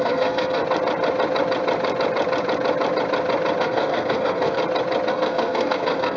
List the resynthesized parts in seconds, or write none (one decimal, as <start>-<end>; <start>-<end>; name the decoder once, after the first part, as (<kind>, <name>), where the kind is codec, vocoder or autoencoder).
0.0-0.6 (codec, SNAC); 3.6-4.6; 5.1-6.2